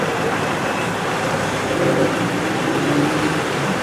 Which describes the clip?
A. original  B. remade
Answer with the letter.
B